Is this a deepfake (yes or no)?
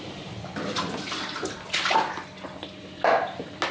no